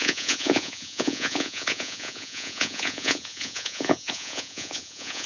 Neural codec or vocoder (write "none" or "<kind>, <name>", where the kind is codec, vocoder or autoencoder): vocoder, Vocos